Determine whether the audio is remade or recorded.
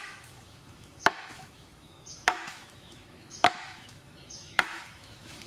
remade